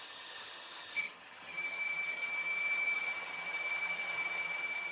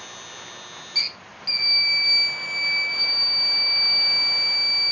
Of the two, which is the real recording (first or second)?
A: second